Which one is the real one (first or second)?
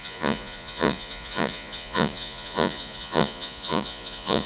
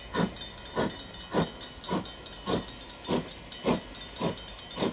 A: second